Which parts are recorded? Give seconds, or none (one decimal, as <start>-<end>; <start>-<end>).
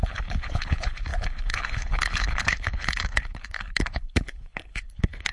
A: none